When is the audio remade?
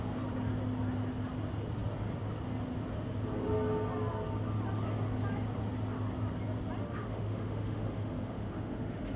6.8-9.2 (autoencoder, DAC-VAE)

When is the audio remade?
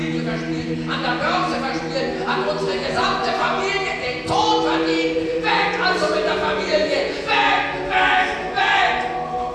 2.7-3.4 (vocoder, Vocos); 6.7-7.5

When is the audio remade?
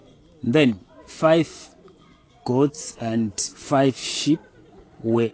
1.1-4.0 (vocoder, Vocos); 4.6-5.3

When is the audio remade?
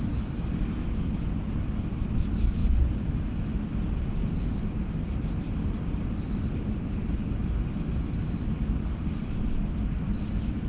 none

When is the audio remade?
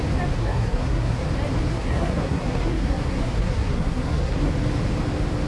0.4-1.2 (codec, SNAC); 1.7-4.5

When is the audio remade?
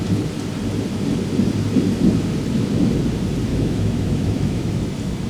3.5-4.8 (autoencoder, DAC-VAE)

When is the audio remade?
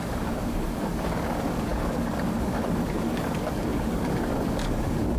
0.0-5.2 (codec, DAC)